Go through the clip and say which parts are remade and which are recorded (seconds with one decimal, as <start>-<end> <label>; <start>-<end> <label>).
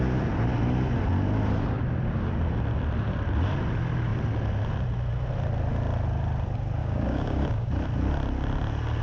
0.0-6.8 recorded; 6.8-7.7 remade; 7.7-9.0 recorded